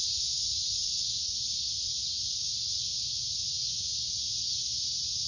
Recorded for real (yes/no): no